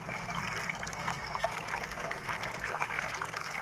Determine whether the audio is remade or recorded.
remade